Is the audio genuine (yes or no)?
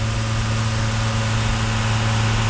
yes